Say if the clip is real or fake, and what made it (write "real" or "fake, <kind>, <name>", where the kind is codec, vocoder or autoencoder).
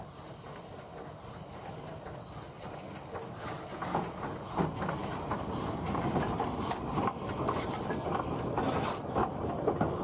real